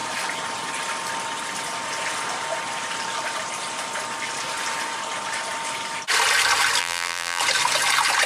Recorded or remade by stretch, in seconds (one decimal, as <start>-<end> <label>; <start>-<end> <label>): 0.0-6.8 recorded; 6.8-7.4 remade; 7.4-8.3 recorded